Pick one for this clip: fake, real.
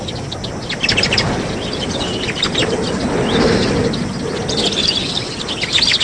real